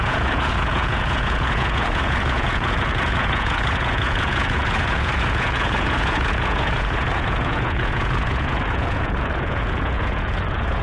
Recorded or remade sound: remade